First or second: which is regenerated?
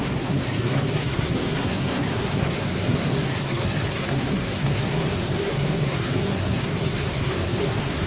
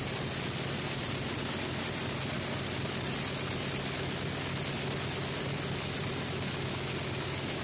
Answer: first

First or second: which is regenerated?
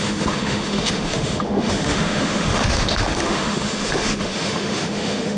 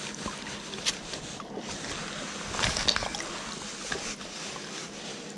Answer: first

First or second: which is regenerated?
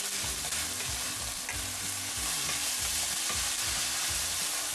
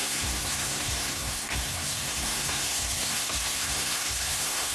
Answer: second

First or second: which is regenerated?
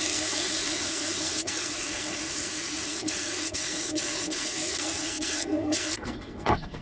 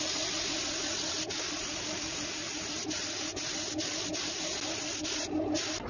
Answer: first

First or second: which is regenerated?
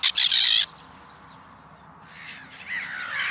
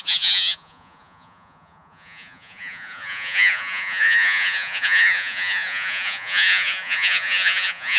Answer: second